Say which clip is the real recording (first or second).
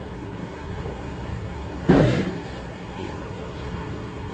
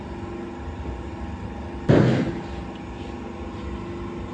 second